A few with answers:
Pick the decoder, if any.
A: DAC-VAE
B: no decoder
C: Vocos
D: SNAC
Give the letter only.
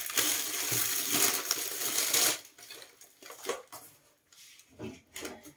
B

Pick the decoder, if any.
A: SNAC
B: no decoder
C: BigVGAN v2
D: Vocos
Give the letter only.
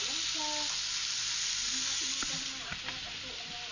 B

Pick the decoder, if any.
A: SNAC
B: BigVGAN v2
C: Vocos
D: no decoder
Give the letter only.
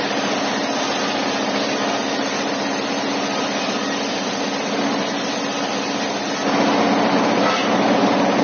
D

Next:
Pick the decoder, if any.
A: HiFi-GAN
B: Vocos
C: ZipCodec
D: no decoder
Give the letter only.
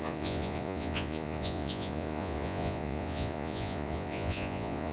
B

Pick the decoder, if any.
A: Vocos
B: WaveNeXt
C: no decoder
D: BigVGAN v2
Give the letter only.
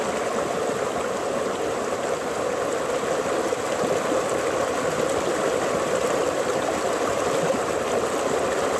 C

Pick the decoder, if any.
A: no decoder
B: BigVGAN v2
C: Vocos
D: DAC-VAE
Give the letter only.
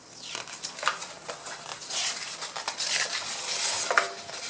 A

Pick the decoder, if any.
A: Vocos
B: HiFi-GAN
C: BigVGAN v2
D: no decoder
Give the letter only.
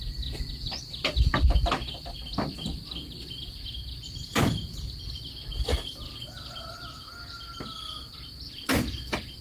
D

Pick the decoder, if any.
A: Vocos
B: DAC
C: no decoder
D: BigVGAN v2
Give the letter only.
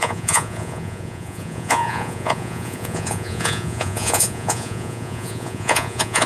A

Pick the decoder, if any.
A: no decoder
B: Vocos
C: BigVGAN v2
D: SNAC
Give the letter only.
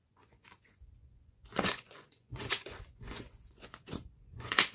B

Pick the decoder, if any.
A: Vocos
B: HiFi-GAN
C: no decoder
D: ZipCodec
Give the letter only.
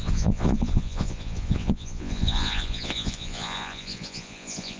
A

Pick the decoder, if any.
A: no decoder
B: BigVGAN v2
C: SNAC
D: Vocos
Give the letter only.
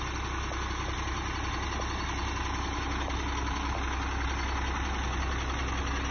A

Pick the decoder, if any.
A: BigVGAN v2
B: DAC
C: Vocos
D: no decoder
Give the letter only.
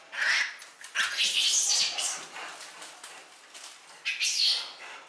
D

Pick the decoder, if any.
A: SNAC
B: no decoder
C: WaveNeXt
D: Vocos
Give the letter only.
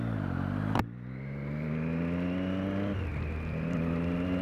B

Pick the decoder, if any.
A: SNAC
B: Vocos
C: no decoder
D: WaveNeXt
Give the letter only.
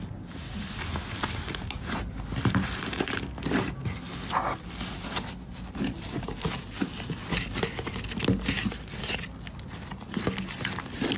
C